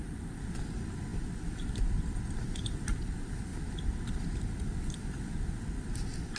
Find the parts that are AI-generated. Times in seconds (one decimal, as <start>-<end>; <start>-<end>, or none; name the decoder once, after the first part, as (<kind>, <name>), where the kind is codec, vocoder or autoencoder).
none